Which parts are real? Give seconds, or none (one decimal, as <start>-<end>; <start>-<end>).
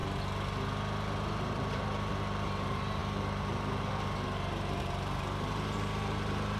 0.0-1.3